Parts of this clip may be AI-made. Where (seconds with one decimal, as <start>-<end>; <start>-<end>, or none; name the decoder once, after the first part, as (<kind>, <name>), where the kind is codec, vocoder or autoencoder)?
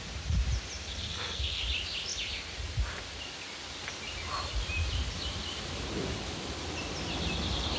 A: 1.0-1.6 (codec, SNAC)